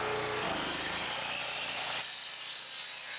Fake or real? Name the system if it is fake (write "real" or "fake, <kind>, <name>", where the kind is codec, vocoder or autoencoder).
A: real